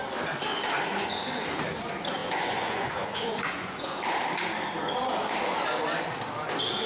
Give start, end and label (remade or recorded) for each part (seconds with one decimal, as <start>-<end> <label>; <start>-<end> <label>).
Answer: 0.0-2.2 recorded; 2.2-4.0 remade; 4.0-6.9 recorded